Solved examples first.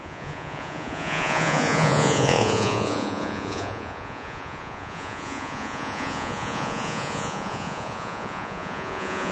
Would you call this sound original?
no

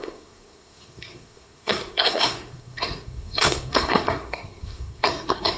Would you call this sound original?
no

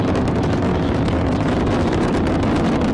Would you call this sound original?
yes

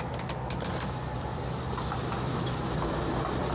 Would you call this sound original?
yes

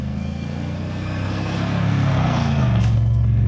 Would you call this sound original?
no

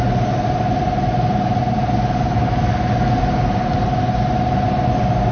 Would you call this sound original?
yes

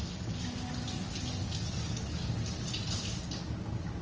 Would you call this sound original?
yes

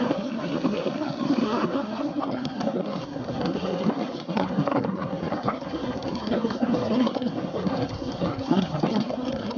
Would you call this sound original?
no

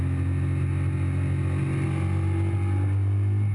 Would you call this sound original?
yes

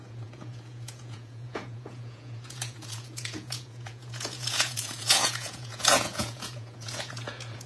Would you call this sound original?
no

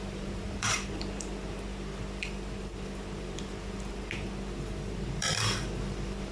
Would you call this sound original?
no